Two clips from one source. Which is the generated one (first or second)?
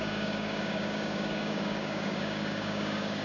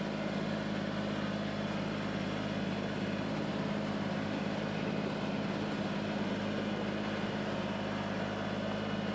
first